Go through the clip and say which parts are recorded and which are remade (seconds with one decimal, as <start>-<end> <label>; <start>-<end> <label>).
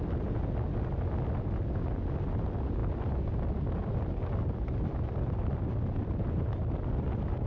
0.0-7.5 recorded